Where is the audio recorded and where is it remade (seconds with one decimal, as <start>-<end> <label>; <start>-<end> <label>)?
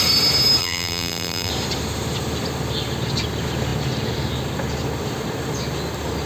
0.0-0.6 recorded; 0.6-1.5 remade; 1.5-6.3 recorded